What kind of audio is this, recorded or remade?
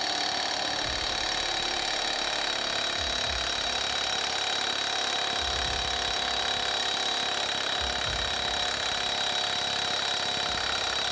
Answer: recorded